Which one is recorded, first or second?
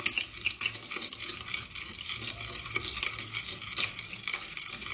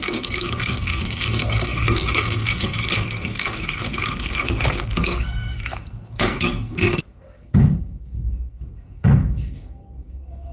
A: first